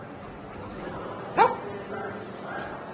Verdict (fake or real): real